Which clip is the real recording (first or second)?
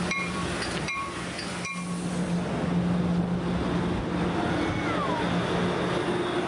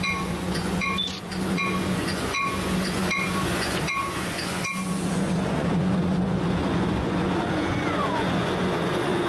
first